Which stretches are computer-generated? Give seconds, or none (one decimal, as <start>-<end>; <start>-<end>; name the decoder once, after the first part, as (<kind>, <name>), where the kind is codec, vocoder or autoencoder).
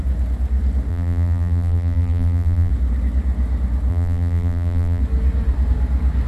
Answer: 0.9-2.7 (vocoder, BigVGAN v2); 3.9-5.0